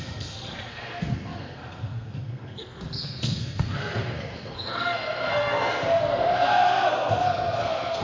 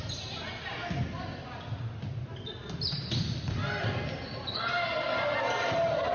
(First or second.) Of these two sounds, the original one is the second